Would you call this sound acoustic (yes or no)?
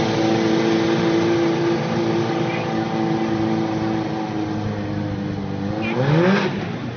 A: yes